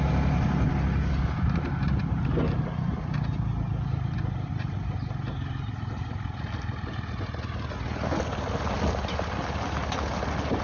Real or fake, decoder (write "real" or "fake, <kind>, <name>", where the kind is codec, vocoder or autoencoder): real